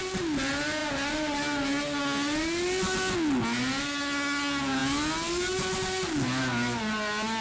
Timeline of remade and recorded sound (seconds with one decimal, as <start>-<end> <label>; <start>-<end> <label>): 0.0-7.4 recorded